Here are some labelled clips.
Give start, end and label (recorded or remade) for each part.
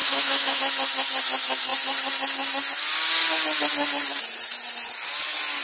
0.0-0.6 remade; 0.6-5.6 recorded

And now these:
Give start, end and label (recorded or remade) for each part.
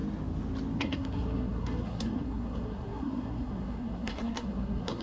0.0-0.8 recorded; 0.8-5.0 remade